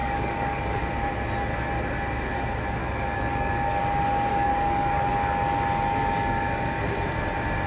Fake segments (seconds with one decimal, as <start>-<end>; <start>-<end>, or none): 0.0-0.8; 2.8-3.8; 4.3-5.1